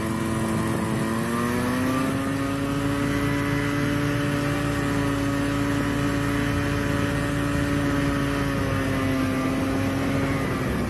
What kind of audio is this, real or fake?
real